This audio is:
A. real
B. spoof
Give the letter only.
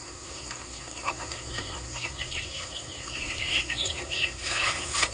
B